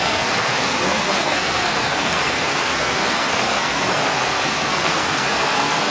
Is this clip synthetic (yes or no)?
yes